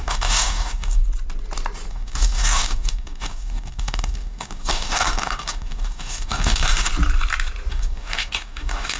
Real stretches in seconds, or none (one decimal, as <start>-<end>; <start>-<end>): 1.0-1.9; 6.9-7.7